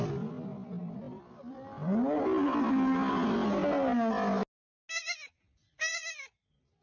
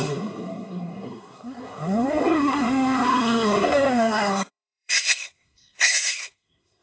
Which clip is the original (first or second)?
first